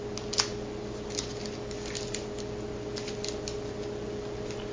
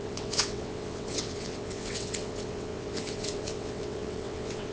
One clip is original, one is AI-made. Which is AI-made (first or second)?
second